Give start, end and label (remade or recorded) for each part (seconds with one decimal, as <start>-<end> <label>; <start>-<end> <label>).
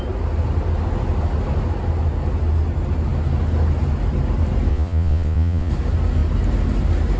0.0-4.7 recorded; 4.7-5.7 remade; 5.7-7.2 recorded